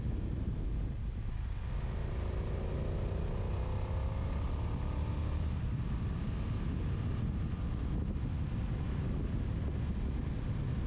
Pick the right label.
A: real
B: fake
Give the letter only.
A